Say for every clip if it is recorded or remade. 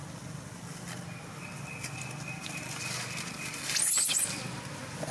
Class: recorded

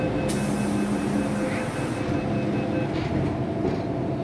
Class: recorded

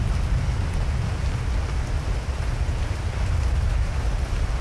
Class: recorded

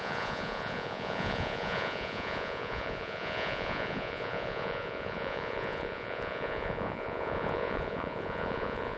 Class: remade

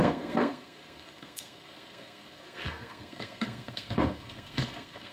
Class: remade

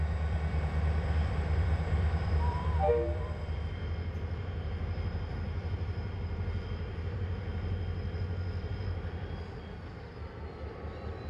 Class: remade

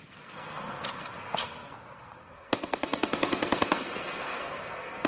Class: remade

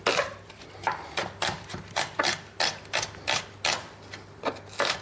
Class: recorded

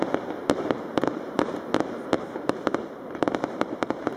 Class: remade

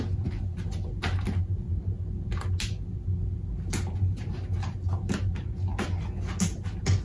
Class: recorded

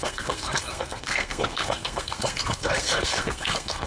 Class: remade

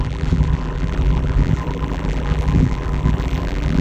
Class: remade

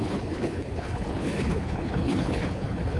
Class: remade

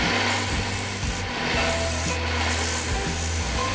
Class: recorded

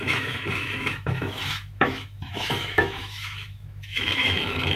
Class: remade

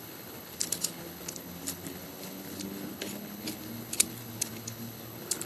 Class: remade